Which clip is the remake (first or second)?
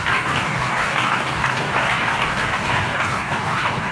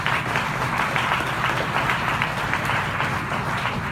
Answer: first